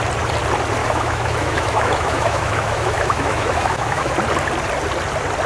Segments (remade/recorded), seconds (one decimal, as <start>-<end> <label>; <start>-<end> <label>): 0.0-0.8 recorded; 0.8-4.1 remade; 4.1-5.5 recorded